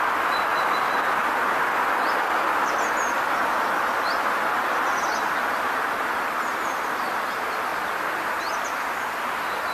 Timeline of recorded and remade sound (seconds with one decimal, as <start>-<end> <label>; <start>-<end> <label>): 0.0-7.7 recorded; 7.7-8.3 remade; 8.3-9.7 recorded